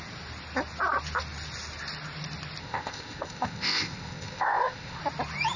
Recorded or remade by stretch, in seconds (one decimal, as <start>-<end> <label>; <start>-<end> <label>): 0.0-2.6 recorded; 2.6-5.0 remade; 5.0-5.6 recorded